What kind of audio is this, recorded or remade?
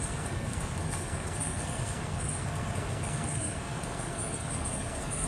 remade